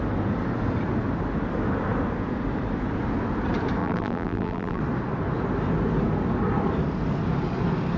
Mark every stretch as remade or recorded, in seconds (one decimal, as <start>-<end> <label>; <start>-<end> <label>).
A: 0.0-3.8 recorded; 3.8-4.8 remade; 4.8-8.0 recorded